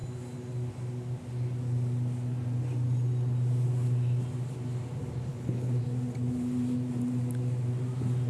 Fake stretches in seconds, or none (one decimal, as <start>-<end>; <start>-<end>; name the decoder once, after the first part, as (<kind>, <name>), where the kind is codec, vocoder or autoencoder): 5.3-5.8 (codec, HILCodec)